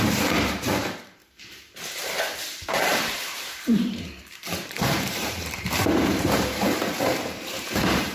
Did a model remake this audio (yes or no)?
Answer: yes